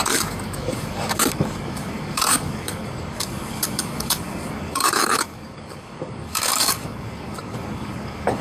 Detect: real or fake fake